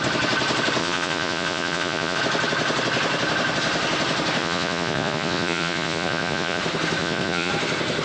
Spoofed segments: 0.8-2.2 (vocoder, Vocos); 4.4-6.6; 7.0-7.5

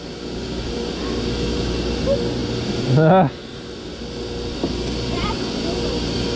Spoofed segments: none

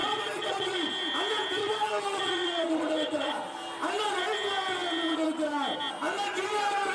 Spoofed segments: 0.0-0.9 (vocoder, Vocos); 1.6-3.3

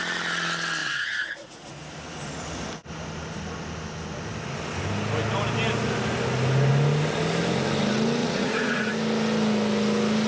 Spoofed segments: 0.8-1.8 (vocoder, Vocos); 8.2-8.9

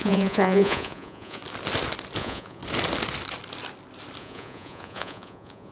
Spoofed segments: 0.0-1.4 (vocoder, Vocos); 2.2-2.6; 4.2-5.7